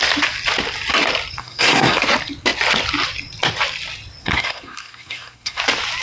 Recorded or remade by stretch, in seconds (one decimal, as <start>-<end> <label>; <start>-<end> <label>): 0.0-1.4 recorded; 1.4-2.0 remade; 2.0-4.2 recorded; 4.2-5.6 remade; 5.6-6.0 recorded